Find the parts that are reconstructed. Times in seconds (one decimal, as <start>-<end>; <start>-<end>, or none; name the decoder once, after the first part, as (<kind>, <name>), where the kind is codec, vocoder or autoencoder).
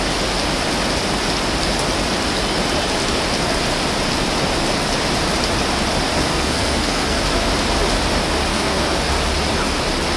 6.3-7.2 (codec, SNAC); 8.5-9.1